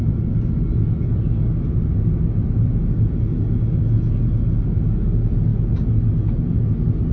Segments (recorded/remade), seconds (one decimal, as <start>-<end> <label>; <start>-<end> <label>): 0.0-7.1 recorded